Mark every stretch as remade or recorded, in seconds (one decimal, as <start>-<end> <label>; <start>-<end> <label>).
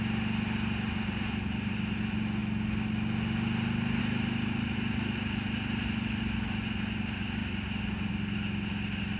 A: 0.0-9.2 recorded